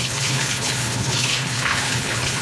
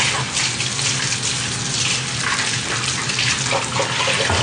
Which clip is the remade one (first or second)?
first